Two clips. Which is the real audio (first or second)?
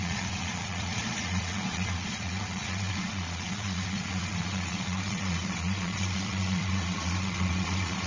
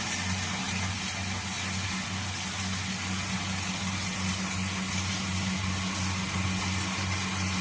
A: second